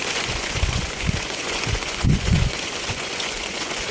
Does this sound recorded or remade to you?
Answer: remade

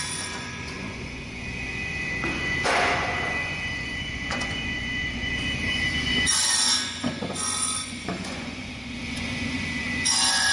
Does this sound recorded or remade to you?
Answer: remade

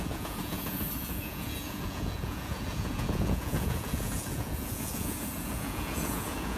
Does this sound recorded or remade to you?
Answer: remade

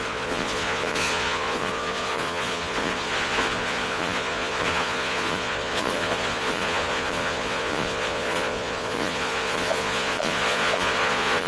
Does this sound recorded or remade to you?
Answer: remade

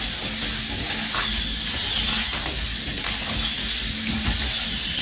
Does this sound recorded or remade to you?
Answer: recorded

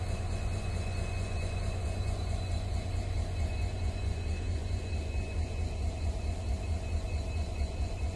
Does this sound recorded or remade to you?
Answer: remade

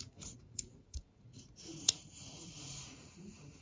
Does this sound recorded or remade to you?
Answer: remade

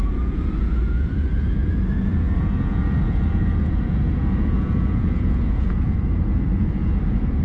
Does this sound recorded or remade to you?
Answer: remade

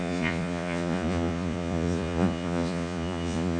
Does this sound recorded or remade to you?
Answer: remade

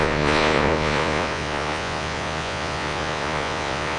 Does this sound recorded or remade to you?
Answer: remade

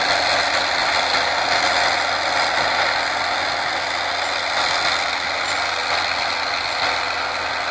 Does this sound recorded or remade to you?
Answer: recorded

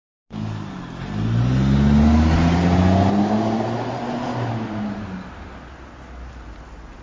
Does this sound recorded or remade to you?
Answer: recorded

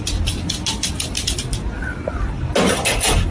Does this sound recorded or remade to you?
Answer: recorded